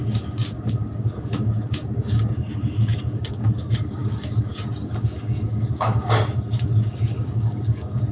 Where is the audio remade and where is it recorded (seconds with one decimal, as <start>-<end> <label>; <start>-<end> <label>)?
0.0-8.1 remade